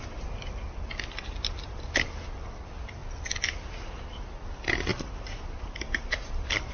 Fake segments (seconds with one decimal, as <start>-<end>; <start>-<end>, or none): 4.9-6.7